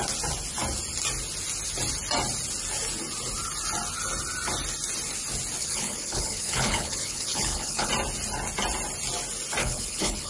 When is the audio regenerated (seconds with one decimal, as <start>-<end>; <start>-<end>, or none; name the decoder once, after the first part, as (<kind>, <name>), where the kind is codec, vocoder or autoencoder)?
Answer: 5.6-7.9 (codec, HILCodec); 9.6-10.3